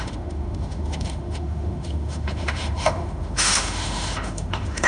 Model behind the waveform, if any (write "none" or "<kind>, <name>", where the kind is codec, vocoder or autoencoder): autoencoder, DAC-VAE